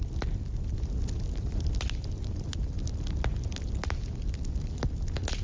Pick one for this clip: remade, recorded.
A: recorded